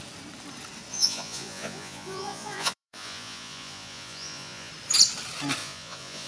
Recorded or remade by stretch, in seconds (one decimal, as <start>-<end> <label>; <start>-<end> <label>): 0.0-0.9 recorded; 0.9-4.7 remade; 4.7-5.6 recorded; 5.6-6.3 remade